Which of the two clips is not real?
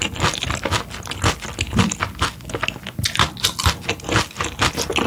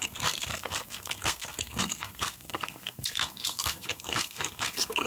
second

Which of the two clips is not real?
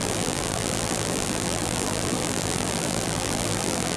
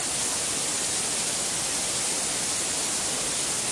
first